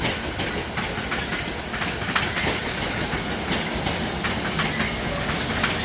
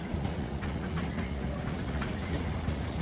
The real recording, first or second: first